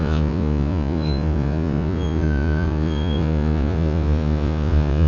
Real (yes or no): no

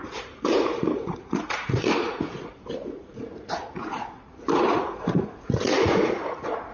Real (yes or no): no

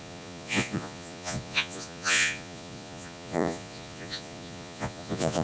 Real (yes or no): no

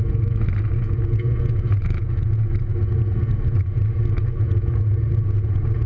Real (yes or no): no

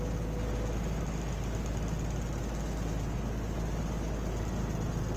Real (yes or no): yes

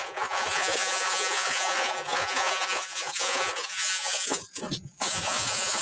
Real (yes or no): no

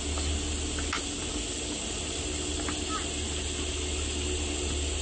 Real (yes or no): yes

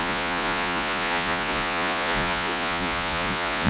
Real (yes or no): no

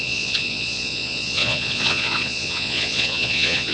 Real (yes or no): no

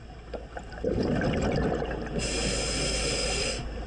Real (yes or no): yes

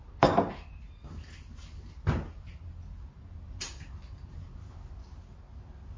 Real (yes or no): yes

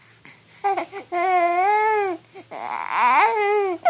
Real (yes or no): yes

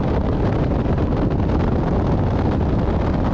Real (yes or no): yes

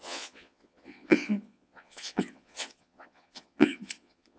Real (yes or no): no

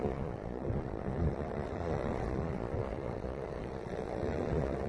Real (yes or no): no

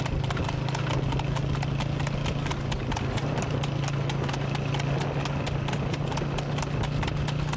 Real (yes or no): yes